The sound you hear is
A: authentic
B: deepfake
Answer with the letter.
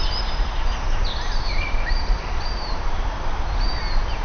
B